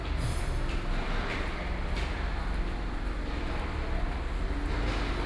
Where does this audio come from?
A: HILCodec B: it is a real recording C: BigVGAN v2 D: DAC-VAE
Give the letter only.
B